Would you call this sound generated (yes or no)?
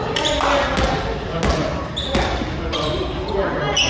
no